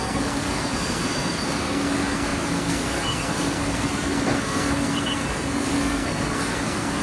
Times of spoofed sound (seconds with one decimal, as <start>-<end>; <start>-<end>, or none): 0.0-7.0